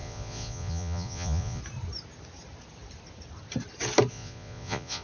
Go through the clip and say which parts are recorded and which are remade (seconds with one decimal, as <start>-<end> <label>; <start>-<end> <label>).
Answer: 0.0-1.6 remade; 1.6-4.1 recorded; 4.1-5.0 remade